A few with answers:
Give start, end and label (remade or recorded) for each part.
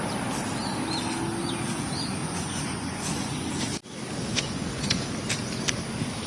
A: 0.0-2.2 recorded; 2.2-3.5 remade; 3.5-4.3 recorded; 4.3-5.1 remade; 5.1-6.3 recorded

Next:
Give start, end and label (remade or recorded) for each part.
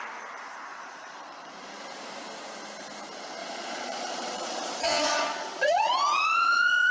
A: 0.0-0.7 recorded; 0.7-1.5 remade; 1.5-3.4 recorded; 3.4-6.9 remade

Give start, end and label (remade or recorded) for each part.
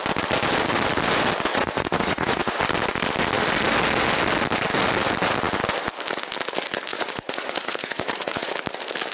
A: 0.0-1.5 recorded; 1.5-2.6 remade; 2.6-6.9 recorded; 6.9-8.5 remade; 8.5-9.1 recorded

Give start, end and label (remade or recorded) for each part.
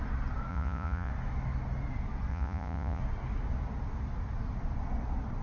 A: 0.0-0.5 recorded; 0.5-1.1 remade; 1.1-2.3 recorded; 2.3-3.0 remade; 3.0-5.4 recorded